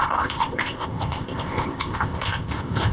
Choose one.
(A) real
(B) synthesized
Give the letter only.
B